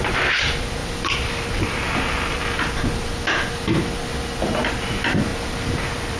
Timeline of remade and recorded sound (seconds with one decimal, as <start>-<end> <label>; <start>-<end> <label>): 0.0-0.8 recorded; 0.8-2.4 remade; 2.4-5.3 recorded; 5.3-6.2 remade